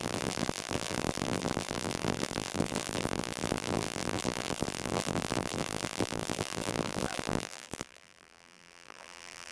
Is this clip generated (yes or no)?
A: yes